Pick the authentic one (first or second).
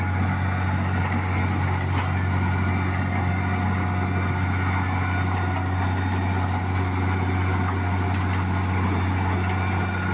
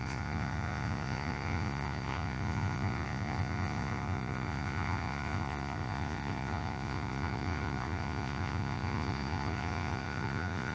first